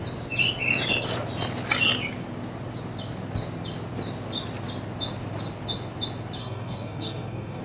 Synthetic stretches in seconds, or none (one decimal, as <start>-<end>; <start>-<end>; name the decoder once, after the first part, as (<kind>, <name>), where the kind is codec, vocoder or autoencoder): 6.4-7.6 (codec, SNAC)